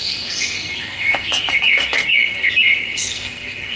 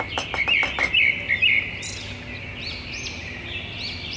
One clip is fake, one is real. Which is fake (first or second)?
first